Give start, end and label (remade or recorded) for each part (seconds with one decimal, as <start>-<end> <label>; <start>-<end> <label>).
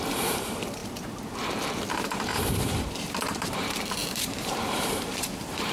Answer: 0.0-0.8 remade; 0.8-1.9 recorded; 1.9-5.7 remade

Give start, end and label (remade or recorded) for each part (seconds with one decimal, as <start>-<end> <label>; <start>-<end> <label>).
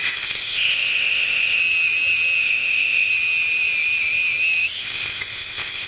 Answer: 0.0-1.6 remade; 1.6-2.4 recorded; 2.4-3.1 remade; 3.1-4.8 recorded; 4.8-5.9 remade